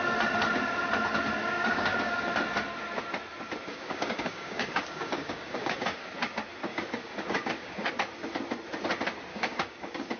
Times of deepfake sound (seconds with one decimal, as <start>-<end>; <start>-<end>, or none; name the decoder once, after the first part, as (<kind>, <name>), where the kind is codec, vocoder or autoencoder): 1.4-2.1 (codec, DAC); 3.7-6.1; 6.7-7.9; 9.3-10.2